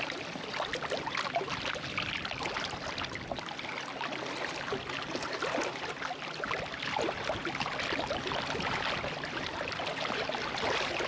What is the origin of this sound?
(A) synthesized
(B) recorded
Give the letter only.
B